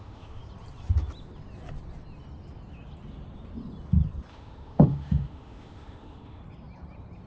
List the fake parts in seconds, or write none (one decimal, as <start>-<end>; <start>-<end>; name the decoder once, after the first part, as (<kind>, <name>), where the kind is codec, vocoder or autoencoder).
0.0-0.4 (autoencoder, DAC-VAE); 4.3-6.4